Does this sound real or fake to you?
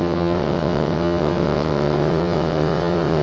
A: fake